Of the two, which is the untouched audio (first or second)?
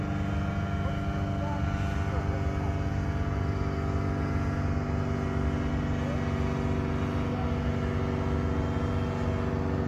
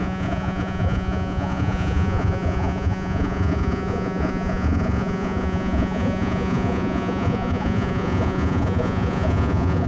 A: first